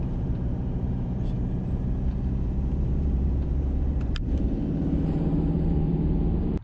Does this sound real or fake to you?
fake